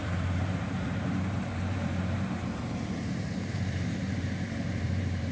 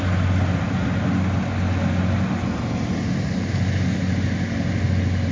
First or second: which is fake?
first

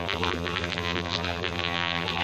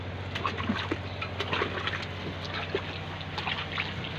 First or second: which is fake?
first